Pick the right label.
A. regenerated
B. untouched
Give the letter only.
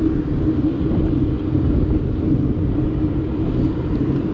B